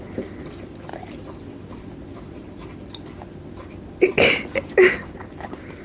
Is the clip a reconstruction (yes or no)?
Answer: no